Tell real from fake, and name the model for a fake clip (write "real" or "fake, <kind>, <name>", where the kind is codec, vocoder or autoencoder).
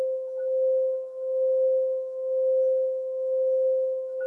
real